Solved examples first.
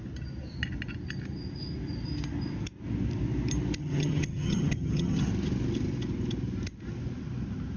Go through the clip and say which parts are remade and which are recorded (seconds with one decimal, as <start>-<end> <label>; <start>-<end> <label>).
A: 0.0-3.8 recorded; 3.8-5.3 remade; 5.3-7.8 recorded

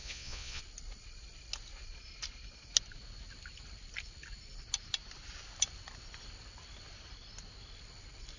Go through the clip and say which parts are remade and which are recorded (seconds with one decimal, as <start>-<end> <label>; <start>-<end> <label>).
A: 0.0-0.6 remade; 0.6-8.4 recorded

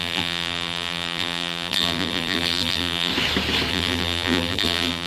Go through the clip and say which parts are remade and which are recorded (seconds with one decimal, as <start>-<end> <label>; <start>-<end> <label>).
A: 0.0-3.1 remade; 3.1-3.7 recorded; 3.7-5.1 remade